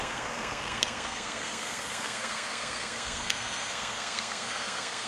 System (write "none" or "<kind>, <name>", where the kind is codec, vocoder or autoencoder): codec, SNAC